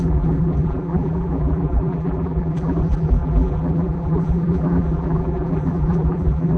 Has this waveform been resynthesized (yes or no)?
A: yes